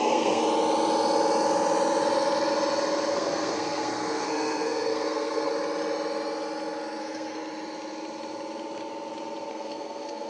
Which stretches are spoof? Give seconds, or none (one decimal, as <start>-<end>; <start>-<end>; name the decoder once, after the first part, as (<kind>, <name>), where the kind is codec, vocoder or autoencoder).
0.0-0.4 (codec, SNAC); 3.1-5.5; 7.0-7.4; 9.5-10.3

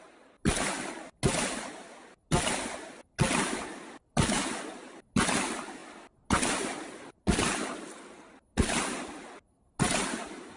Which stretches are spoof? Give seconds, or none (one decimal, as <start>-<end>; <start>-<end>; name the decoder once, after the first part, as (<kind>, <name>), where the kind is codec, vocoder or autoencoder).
none

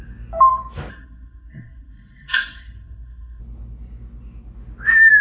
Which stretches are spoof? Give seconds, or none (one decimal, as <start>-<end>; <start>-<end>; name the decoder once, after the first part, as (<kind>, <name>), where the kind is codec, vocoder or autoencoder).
0.9-3.4 (codec, SNAC)